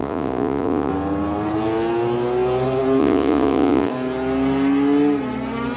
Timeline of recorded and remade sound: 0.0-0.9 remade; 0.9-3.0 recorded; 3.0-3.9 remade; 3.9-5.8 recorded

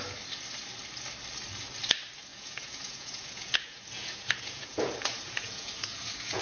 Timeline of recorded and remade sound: 0.0-2.3 recorded; 2.3-6.4 remade

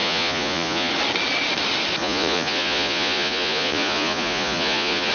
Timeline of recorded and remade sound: 0.0-0.9 remade; 0.9-2.0 recorded; 2.0-5.1 remade

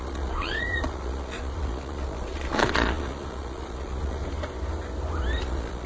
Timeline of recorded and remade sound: 0.0-4.2 remade; 4.2-5.4 recorded; 5.4-5.9 remade